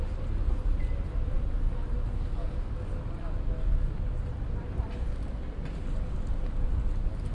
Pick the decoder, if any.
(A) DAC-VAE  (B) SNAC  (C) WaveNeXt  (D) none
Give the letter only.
D